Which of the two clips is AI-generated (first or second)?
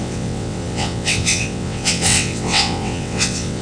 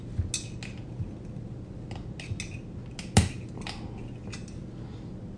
first